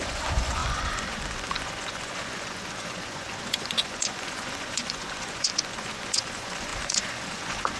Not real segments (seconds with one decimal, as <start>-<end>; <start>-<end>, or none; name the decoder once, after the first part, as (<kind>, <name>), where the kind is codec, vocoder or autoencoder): 0.0-7.8 (vocoder, Vocos)